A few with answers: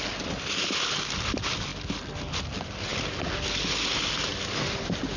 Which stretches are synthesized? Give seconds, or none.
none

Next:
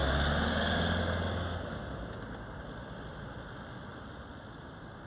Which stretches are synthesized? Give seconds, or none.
none

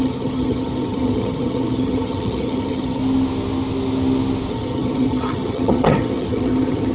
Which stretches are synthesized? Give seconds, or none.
0.0-3.0 (vocoder, HiFi-GAN); 4.5-6.9

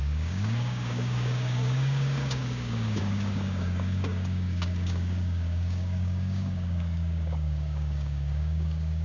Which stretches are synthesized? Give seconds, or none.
0.0-9.0 (codec, DAC)